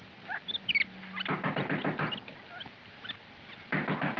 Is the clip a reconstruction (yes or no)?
no